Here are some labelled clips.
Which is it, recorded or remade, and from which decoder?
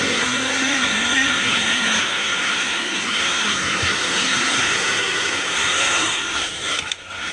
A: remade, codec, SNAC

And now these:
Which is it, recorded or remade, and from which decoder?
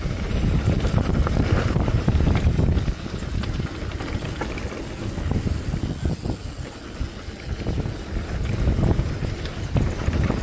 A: recorded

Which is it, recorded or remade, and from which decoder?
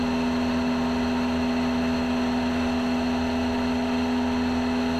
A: recorded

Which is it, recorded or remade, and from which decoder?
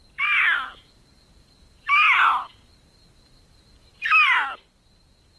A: recorded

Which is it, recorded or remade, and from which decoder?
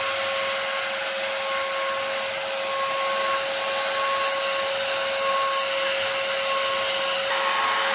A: recorded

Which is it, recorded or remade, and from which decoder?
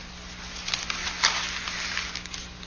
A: recorded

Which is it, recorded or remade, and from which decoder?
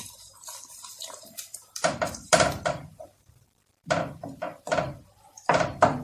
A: remade, vocoder, BigVGAN v2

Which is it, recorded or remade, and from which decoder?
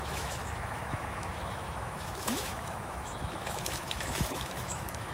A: remade, autoencoder, DAC-VAE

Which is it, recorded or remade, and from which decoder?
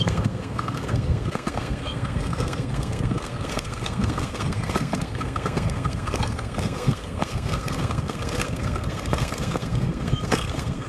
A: remade, codec, SNAC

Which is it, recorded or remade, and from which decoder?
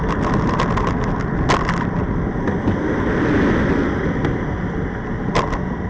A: recorded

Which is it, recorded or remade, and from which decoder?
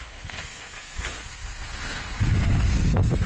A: remade, codec, SNAC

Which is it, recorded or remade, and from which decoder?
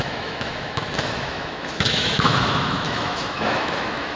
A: remade, autoencoder, DAC-VAE